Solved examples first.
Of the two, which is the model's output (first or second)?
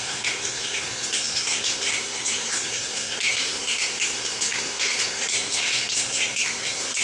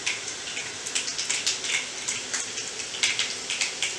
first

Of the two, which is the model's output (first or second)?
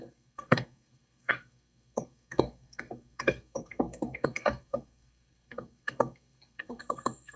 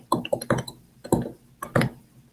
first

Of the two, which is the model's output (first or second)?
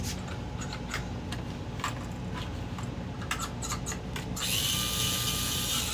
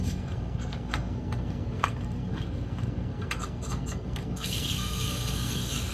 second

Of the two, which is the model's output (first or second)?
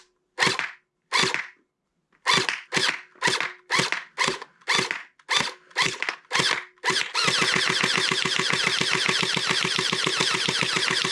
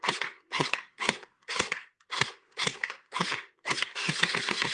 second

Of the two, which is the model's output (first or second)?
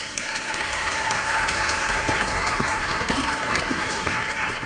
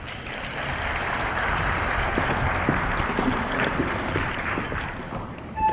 first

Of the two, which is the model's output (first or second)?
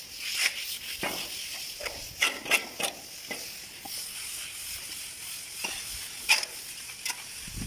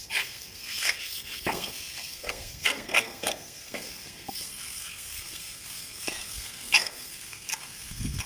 second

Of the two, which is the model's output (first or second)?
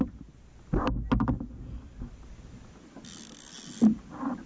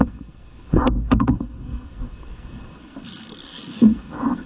second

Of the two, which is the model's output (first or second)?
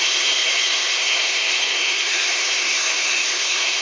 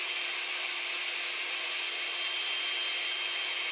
first